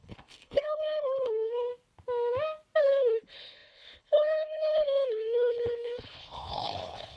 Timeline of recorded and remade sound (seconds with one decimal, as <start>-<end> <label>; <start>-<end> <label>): 0.0-1.7 remade; 1.7-2.8 recorded; 2.8-7.2 remade